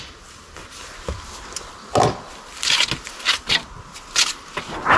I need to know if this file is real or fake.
real